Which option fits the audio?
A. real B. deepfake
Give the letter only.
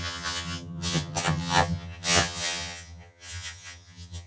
B